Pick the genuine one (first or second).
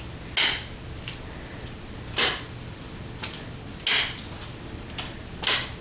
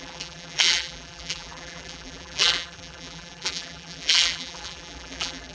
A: first